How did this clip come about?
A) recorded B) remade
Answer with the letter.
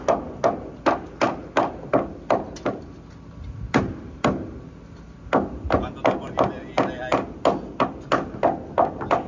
A